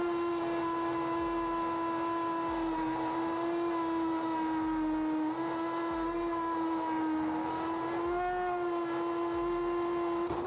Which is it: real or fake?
real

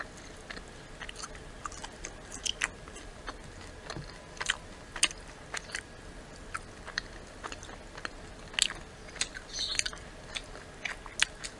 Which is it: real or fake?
real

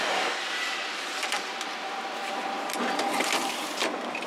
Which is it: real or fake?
real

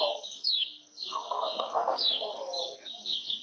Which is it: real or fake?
fake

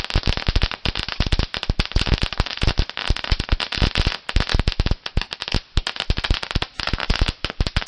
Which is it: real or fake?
real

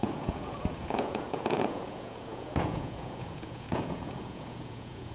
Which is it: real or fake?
fake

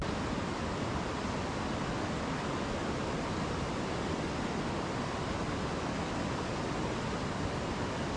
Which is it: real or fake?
real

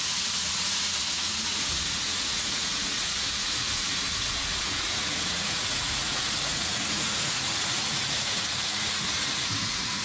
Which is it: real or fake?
fake